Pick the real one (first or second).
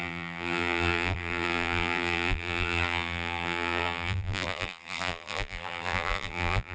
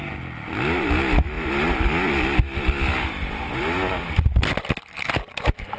second